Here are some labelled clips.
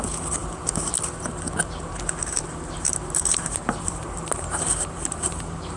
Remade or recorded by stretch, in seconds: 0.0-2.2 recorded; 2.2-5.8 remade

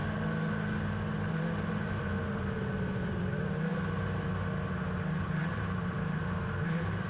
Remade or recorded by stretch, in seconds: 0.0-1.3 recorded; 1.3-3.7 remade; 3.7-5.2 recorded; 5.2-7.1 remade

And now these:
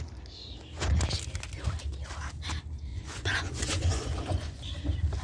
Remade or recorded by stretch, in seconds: 0.0-2.9 recorded; 2.9-4.7 remade; 4.7-5.2 recorded

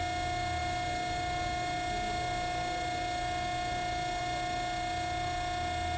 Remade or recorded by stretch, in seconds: 0.0-6.0 recorded

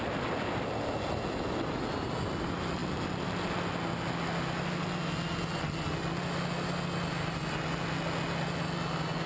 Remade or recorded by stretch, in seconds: 0.0-9.3 recorded